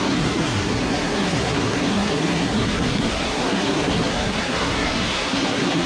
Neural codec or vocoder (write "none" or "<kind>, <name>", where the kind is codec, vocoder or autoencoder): codec, SNAC